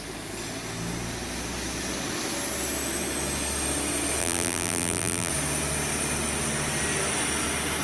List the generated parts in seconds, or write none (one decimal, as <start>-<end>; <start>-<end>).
4.2-5.3